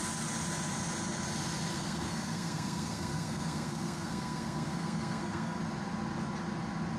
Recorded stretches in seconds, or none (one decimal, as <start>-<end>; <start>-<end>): 0.0-1.7; 5.6-7.0